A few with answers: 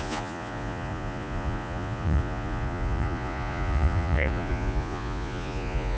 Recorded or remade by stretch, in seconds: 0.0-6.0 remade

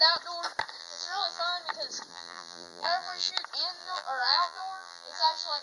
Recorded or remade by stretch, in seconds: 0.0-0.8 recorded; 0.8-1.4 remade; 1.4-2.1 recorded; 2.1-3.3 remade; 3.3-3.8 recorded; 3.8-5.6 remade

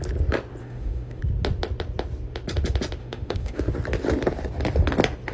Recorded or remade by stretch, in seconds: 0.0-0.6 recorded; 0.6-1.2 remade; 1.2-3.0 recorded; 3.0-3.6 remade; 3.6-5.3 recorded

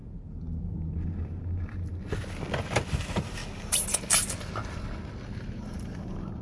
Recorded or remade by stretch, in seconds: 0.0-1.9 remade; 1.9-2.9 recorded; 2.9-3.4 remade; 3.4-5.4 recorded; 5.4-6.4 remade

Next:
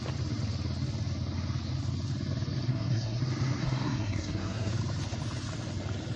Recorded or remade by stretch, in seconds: 0.0-2.7 recorded; 2.7-3.2 remade; 3.2-3.6 recorded; 3.6-4.7 remade; 4.7-6.2 recorded